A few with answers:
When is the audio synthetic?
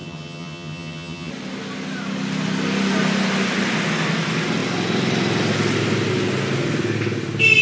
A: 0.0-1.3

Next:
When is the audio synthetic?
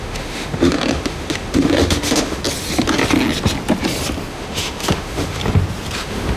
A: 0.0-2.4; 4.3-5.4; 6.0-6.4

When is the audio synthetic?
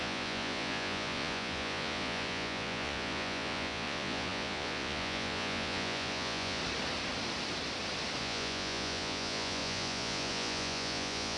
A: 0.0-6.6; 8.2-11.4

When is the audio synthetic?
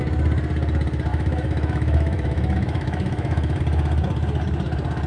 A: 1.1-3.6